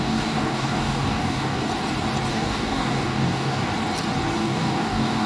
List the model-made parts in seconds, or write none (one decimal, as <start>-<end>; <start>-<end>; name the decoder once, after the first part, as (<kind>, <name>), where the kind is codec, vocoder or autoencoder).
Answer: 0.0-1.7 (codec, DAC); 2.3-3.7; 4.4-5.3